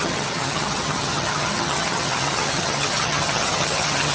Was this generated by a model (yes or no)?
yes